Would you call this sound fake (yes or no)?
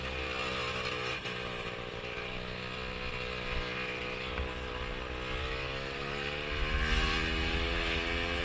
no